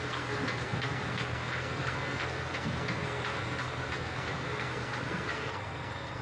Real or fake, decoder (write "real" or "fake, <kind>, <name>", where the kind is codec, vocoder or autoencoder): fake, codec, SNAC